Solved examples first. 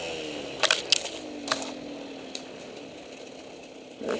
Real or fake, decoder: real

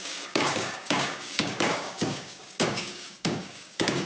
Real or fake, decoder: fake, codec, DAC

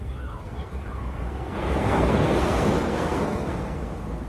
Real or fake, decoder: fake, codec, SNAC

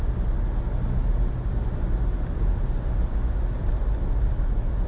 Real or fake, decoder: real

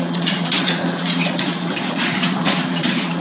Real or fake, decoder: fake, vocoder, Vocos